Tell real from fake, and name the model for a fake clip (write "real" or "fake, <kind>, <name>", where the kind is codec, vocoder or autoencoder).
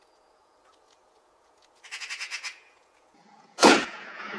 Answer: fake, vocoder, Vocos